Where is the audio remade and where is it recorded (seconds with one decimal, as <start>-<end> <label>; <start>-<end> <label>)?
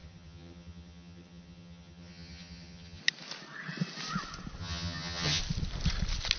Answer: 0.0-3.0 remade; 3.0-4.6 recorded; 4.6-5.4 remade; 5.4-6.4 recorded